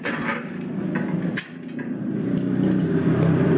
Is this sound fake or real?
real